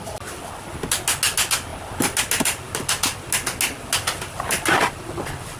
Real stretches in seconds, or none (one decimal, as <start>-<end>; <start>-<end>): 0.0-5.6